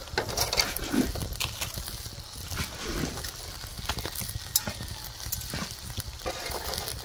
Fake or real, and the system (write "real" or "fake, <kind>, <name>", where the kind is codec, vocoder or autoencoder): real